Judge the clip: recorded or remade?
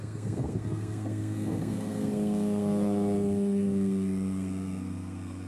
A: remade